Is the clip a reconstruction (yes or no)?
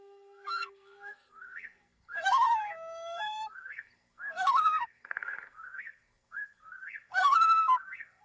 yes